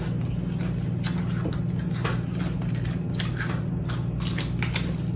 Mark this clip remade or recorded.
recorded